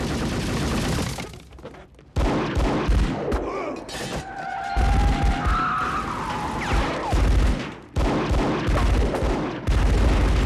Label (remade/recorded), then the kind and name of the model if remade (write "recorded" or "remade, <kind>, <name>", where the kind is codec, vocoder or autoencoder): recorded